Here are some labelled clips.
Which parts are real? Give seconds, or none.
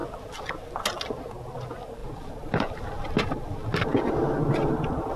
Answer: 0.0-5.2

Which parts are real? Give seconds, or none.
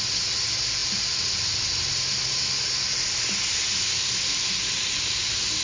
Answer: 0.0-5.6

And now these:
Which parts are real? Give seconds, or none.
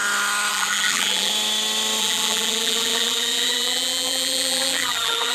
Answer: 0.0-0.5; 1.3-2.0